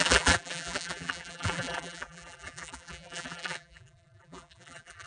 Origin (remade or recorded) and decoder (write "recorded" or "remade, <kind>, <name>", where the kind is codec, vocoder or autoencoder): remade, vocoder, BigVGAN v2